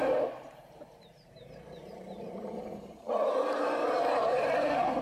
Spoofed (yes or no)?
yes